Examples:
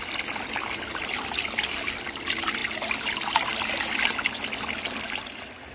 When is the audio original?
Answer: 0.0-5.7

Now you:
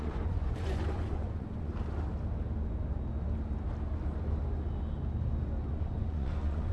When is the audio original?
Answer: 1.7-5.7